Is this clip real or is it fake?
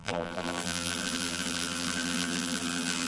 fake